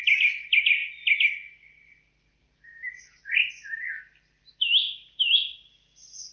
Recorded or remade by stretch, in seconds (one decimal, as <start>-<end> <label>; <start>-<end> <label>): 0.0-6.3 recorded